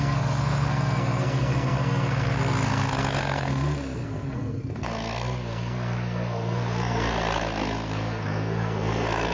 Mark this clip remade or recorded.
remade